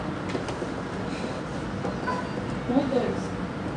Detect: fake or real real